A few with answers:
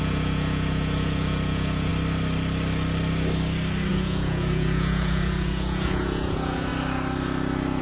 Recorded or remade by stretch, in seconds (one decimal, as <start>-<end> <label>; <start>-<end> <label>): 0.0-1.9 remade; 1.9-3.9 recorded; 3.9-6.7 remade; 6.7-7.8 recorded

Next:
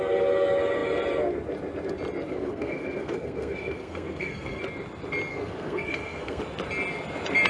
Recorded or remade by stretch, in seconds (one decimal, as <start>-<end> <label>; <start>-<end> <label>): 0.0-2.3 recorded; 2.3-4.6 remade; 4.6-5.3 recorded; 5.3-6.4 remade; 6.4-7.5 recorded

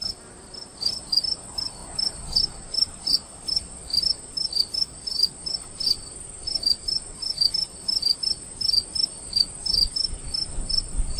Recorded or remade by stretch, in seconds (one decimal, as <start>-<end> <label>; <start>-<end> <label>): 0.0-1.8 recorded; 1.8-3.7 remade; 3.7-11.2 recorded

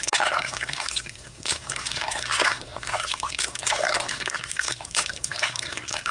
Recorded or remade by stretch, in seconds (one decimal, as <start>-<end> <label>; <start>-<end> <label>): 0.0-6.1 remade

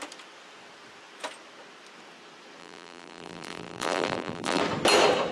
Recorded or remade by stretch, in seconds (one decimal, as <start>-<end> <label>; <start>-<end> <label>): 0.0-2.6 recorded; 2.6-4.6 remade; 4.6-5.3 recorded